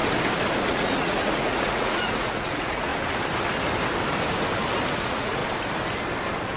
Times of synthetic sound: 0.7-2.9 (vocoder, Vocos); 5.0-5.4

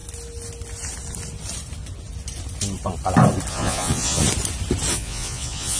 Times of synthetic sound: 3.5-4.2 (vocoder, Vocos); 4.9-5.8

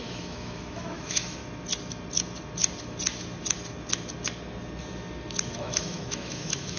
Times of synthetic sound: 0.0-1.4 (autoencoder, DAC-VAE); 5.5-6.8

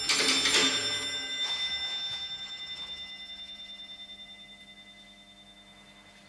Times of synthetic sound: none

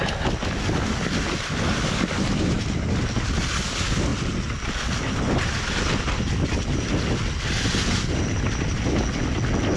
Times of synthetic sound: none

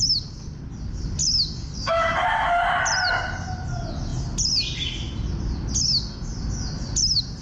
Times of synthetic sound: none